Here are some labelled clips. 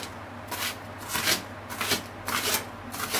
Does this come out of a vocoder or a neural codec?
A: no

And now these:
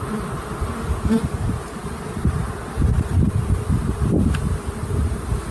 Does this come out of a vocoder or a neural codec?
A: no